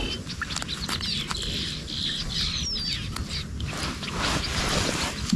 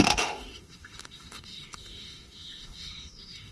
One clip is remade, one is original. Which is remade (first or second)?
second